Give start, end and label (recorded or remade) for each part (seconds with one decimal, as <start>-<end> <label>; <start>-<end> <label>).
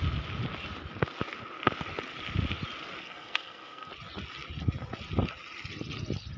0.0-3.0 recorded; 3.0-3.9 remade; 3.9-6.4 recorded